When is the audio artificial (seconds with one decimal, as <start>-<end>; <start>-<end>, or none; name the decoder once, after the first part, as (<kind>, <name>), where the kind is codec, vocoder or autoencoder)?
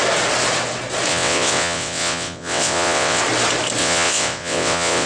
1.1-3.2 (vocoder, WaveNeXt); 3.8-5.1